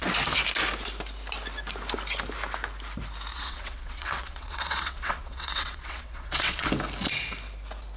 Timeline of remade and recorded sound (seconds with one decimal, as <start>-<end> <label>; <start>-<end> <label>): 0.0-3.3 recorded; 3.3-6.7 remade; 6.7-8.0 recorded

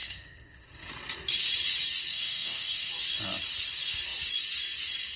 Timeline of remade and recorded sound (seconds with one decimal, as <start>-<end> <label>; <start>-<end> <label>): 0.0-0.9 remade; 0.9-2.1 recorded; 2.1-2.9 remade; 2.9-5.2 recorded

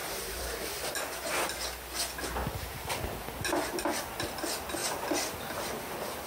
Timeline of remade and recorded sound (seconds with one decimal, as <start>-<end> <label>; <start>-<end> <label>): 0.0-0.9 remade; 0.9-6.3 recorded